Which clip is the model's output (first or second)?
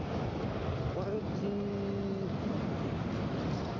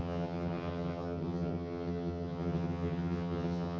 second